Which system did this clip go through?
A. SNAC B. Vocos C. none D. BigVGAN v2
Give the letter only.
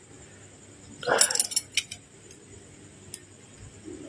C